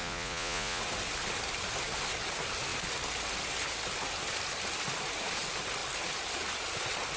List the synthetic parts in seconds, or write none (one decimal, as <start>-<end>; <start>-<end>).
0.0-0.8